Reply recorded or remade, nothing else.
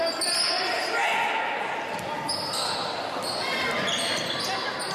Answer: recorded